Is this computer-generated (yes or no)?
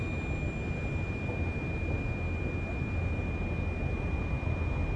no